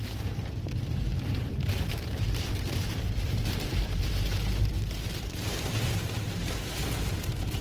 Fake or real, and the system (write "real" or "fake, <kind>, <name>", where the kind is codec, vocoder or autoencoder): fake, vocoder, BigVGAN v2